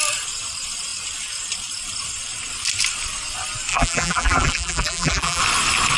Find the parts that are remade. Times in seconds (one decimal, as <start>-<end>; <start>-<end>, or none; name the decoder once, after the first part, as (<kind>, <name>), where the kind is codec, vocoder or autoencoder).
3.7-5.4 (vocoder, BigVGAN v2)